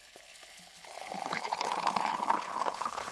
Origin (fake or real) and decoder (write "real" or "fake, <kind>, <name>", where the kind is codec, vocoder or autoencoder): fake, codec, HILCodec